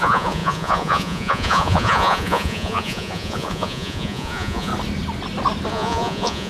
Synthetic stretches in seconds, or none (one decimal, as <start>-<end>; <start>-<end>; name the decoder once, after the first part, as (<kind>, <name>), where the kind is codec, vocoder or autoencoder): 0.0-4.7 (vocoder, Vocos); 5.7-6.5